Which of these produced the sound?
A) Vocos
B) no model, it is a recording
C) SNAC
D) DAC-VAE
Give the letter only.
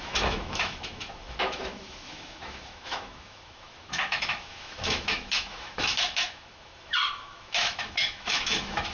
D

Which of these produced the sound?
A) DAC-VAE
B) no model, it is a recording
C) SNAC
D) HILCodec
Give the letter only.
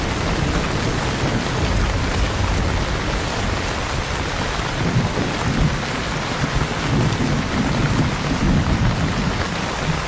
B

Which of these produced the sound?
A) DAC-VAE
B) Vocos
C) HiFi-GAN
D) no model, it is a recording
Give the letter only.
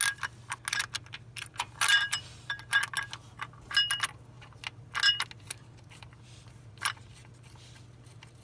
D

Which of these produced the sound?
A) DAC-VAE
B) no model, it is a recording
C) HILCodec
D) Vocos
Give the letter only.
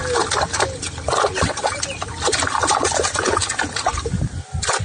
B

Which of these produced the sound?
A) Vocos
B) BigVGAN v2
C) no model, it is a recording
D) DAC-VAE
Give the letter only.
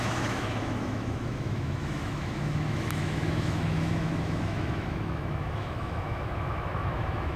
D